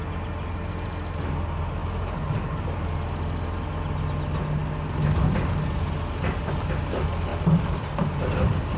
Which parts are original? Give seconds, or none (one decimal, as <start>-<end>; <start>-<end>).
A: 0.0-1.8; 2.8-8.8